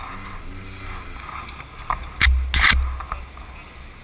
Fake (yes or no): no